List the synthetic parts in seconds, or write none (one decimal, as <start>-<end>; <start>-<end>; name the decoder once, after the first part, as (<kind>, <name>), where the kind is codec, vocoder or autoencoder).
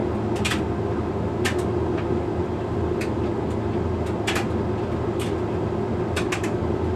none